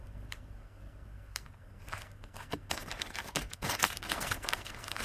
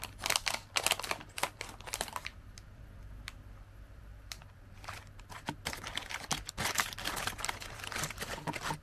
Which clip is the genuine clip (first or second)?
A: second